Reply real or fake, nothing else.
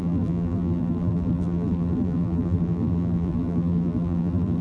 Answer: fake